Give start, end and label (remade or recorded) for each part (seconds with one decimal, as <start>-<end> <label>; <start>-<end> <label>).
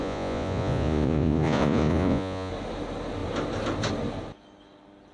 0.0-2.5 remade; 2.5-5.1 recorded